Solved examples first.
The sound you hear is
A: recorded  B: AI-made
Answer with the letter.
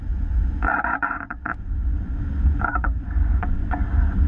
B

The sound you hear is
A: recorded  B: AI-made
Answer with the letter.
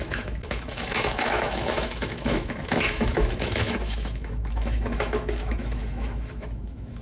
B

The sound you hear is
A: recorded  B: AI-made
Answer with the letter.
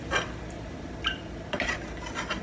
B